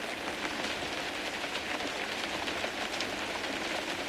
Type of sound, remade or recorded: recorded